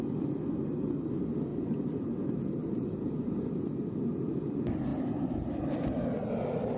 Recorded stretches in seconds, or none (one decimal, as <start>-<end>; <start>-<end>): 0.0-1.5; 3.5-4.9; 5.6-6.8